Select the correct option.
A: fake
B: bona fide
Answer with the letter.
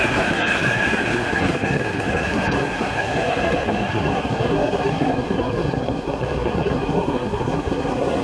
A